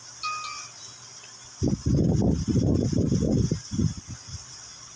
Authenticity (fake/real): real